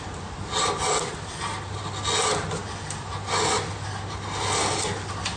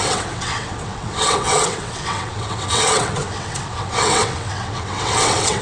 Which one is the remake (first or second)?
second